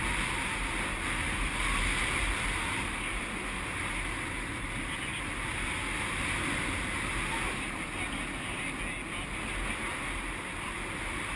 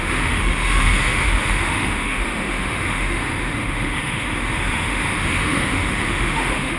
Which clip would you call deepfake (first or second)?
second